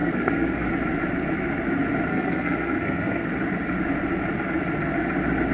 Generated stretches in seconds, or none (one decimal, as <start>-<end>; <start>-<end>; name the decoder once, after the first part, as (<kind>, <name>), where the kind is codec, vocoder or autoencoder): 0.0-0.7 (codec, SNAC); 2.1-3.3